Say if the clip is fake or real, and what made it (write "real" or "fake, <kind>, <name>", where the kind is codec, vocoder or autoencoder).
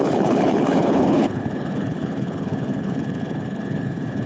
fake, codec, HILCodec